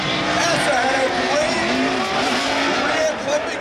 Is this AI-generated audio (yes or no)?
yes